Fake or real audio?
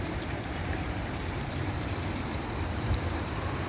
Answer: fake